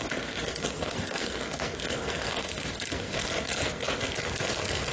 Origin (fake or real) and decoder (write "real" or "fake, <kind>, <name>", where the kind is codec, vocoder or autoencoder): fake, codec, SNAC